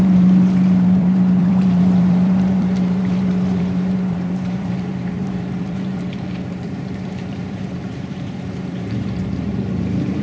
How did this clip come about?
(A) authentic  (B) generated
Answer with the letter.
B